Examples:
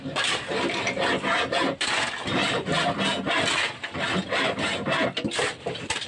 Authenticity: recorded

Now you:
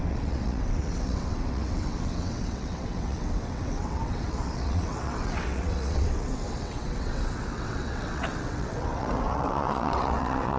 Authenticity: remade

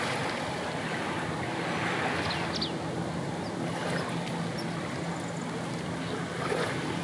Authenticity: recorded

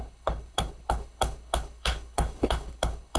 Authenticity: remade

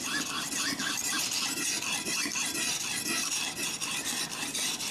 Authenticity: recorded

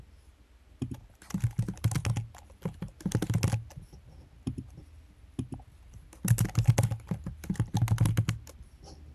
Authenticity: recorded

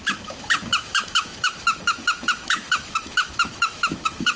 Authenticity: remade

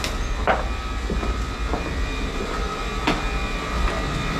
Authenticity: recorded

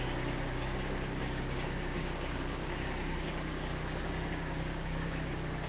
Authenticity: remade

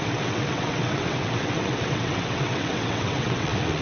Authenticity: remade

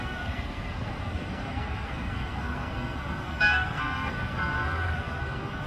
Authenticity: remade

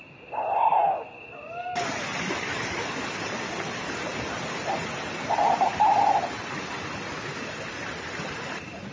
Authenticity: recorded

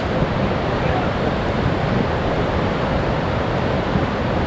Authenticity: recorded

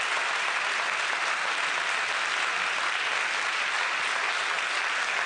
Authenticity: recorded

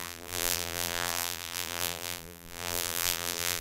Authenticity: remade